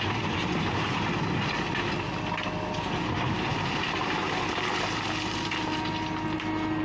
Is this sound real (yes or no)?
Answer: yes